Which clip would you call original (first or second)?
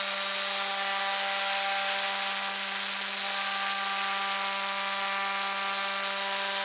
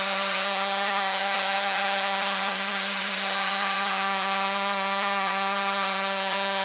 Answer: first